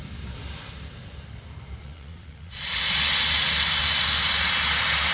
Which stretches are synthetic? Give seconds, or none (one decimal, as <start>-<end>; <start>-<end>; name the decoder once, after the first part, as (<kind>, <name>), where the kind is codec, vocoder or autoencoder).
1.8-2.8 (vocoder, Vocos)